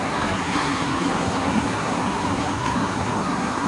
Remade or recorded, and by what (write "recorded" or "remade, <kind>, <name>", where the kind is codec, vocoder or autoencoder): remade, codec, SNAC